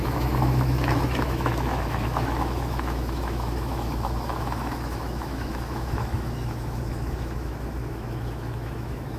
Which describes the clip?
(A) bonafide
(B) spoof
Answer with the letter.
B